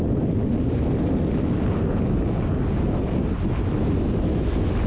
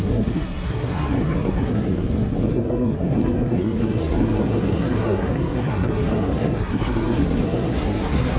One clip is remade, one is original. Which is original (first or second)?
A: first